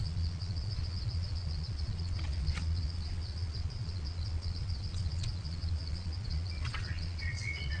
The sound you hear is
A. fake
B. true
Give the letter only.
A